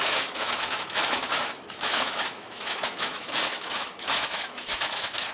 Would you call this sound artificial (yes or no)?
yes